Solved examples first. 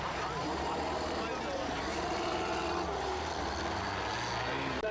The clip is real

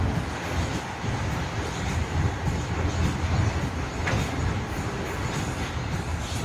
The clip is real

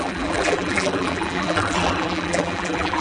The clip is fake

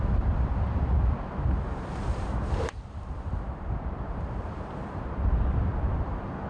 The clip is fake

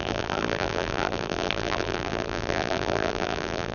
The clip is fake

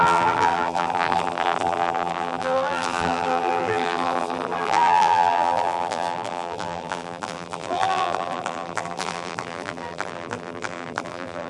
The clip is fake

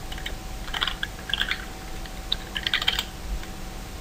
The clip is real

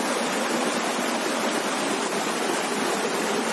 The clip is real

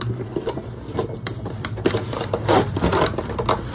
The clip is fake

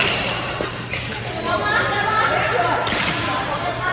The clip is fake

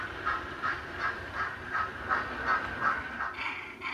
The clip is fake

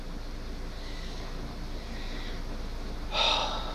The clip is real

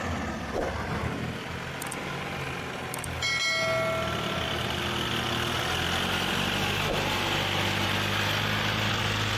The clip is real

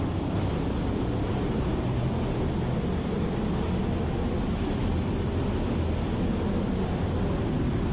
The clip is real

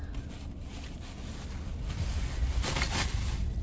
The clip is real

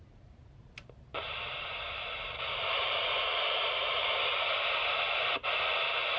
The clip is fake